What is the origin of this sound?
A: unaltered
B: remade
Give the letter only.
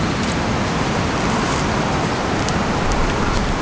A